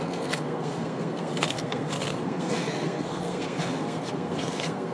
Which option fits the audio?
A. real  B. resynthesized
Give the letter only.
B